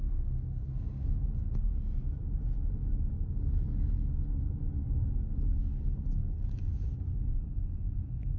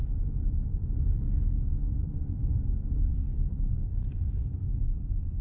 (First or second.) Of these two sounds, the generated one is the second